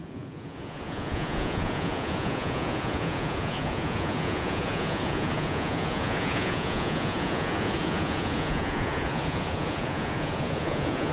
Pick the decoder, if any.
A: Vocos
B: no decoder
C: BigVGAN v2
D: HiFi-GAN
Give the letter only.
A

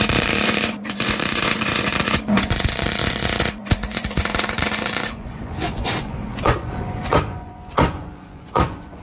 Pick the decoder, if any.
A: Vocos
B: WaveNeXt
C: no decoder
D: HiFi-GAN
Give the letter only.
A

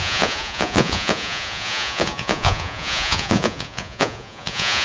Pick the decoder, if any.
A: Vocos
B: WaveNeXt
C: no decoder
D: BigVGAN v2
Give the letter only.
A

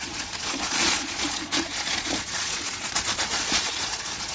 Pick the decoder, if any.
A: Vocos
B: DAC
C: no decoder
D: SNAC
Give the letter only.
A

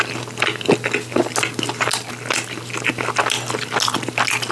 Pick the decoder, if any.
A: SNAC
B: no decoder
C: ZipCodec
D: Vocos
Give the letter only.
B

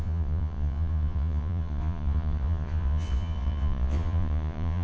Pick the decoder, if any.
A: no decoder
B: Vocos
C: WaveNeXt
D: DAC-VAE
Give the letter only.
B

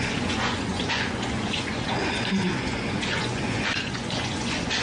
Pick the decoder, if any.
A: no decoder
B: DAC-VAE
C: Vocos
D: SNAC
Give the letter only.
C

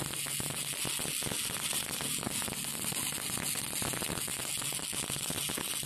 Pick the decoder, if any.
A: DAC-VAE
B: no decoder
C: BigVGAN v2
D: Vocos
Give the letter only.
B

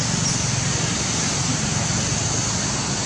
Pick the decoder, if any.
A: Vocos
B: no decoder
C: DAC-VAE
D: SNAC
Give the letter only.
B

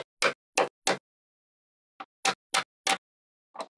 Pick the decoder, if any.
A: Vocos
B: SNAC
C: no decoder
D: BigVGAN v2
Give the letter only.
C